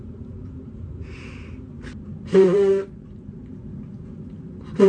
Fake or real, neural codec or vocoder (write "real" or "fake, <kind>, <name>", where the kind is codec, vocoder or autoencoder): fake, vocoder, BigVGAN v2